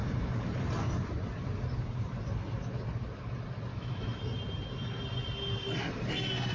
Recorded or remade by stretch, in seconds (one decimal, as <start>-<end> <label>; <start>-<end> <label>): 0.0-3.7 recorded; 3.7-4.2 remade; 4.2-6.5 recorded